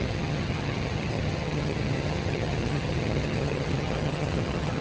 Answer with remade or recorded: remade